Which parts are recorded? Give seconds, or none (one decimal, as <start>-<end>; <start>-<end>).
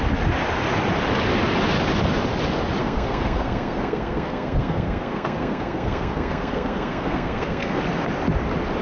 0.0-2.8; 7.8-8.8